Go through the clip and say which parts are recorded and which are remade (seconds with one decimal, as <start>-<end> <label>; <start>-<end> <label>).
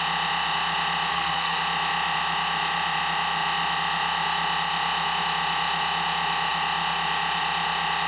0.0-1.1 recorded; 1.1-1.6 remade; 1.6-8.1 recorded